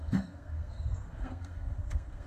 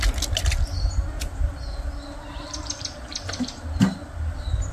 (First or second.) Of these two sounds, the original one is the second